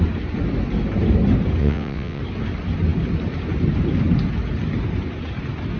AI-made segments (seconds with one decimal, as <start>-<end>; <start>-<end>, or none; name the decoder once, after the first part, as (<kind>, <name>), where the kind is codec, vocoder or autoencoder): 1.6-2.2 (vocoder, WaveNeXt)